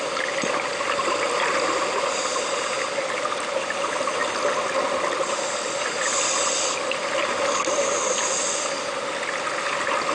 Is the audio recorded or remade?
recorded